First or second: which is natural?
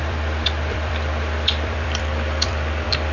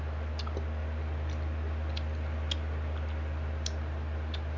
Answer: second